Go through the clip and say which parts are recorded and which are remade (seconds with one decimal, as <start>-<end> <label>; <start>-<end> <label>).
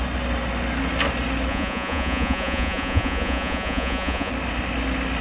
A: 0.0-1.5 recorded; 1.5-4.3 remade; 4.3-5.2 recorded